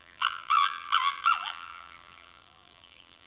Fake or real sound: fake